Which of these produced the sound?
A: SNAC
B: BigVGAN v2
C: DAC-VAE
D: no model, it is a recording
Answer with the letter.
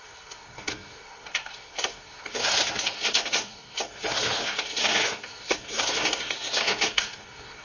A